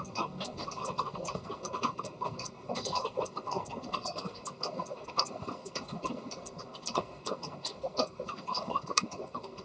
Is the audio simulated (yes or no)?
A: yes